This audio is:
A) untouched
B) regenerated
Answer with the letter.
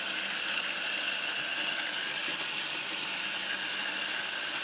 A